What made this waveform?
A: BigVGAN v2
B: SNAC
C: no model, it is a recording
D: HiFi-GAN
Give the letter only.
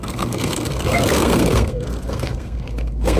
B